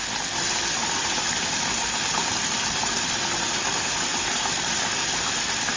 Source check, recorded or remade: recorded